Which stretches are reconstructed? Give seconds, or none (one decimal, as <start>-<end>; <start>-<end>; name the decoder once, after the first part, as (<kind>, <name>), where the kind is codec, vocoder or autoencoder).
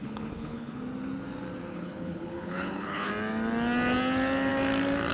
0.0-0.8 (codec, HILCodec); 1.7-3.1